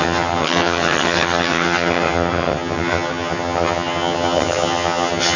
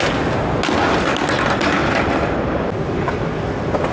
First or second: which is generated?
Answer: first